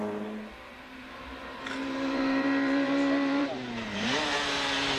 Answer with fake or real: fake